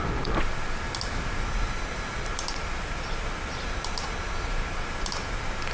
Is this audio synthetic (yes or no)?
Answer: no